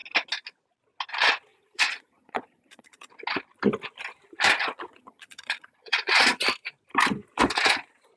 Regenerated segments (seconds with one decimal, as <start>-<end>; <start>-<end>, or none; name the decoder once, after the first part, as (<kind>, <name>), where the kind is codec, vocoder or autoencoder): 1.5-3.1 (vocoder, Vocos); 4.6-6.3